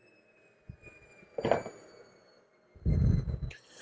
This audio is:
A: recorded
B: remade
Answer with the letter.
A